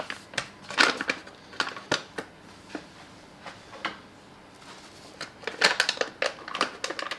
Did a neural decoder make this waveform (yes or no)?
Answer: no